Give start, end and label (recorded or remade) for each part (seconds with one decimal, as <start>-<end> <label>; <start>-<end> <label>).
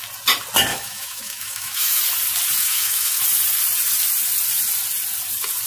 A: 0.0-0.7 recorded; 0.7-2.0 remade; 2.0-2.6 recorded; 2.6-3.2 remade; 3.2-5.7 recorded